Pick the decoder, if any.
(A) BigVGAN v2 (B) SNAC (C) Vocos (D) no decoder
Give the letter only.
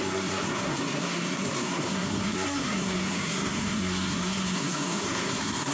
B